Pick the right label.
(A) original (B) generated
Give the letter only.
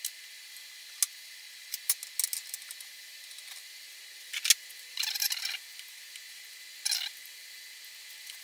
A